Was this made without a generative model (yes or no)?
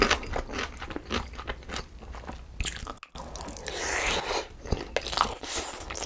yes